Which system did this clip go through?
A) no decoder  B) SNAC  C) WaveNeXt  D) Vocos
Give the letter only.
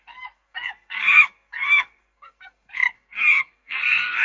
B